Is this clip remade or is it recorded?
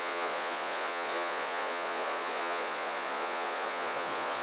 remade